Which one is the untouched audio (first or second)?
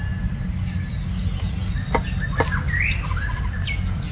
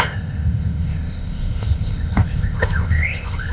first